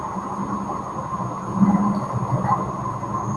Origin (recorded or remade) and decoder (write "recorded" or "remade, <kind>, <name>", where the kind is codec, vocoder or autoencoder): recorded